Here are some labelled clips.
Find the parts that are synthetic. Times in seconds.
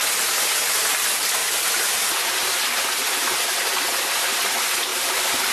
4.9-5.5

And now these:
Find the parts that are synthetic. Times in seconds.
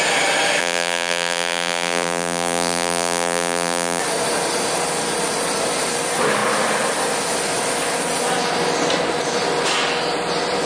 0.6-4.0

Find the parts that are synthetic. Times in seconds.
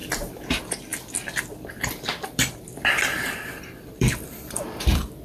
0.5-5.2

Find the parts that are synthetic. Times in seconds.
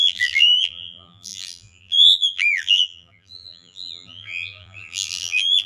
0.0-5.7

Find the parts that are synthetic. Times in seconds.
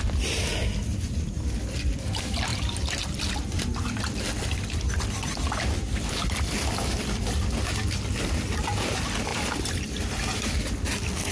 0.0-11.3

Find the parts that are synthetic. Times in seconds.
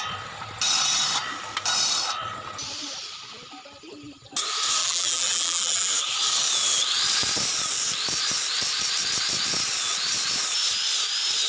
4.8-5.9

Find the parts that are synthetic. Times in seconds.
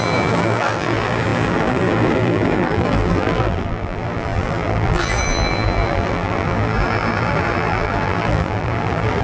0.0-9.2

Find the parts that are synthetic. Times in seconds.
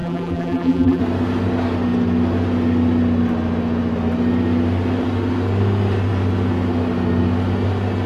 0.0-1.0